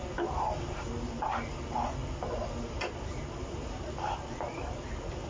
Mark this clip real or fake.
real